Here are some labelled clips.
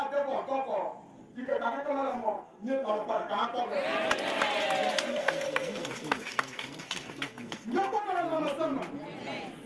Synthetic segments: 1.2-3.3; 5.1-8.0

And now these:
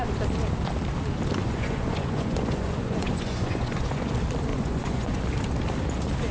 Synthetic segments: 1.4-4.1; 4.5-5.2